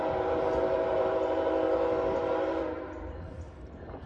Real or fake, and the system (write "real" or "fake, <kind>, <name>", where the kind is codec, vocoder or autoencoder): fake, vocoder, BigVGAN v2